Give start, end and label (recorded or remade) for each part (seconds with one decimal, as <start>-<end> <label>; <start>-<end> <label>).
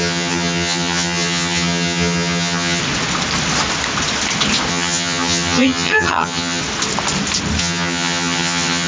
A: 0.0-2.8 remade; 2.8-4.7 recorded; 4.7-6.6 remade; 6.6-7.6 recorded; 7.6-8.9 remade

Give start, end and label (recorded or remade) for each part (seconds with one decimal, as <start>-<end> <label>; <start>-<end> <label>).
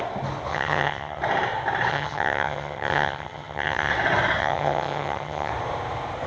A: 0.0-0.5 recorded; 0.5-1.2 remade; 1.2-1.9 recorded; 1.9-3.9 remade; 3.9-4.4 recorded; 4.4-5.5 remade; 5.5-6.3 recorded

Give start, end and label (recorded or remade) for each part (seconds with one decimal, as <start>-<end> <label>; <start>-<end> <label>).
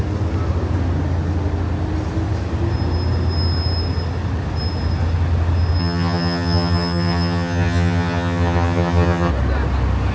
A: 0.0-5.8 recorded; 5.8-9.3 remade; 9.3-10.1 recorded